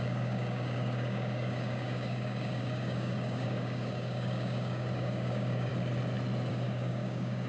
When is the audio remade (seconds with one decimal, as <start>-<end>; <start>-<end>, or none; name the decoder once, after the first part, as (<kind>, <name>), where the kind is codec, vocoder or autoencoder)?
0.0-5.7 (codec, DAC); 6.5-7.5